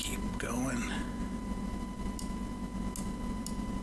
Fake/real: real